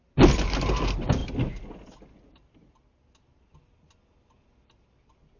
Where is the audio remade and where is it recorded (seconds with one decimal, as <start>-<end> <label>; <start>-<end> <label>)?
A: 0.0-5.4 recorded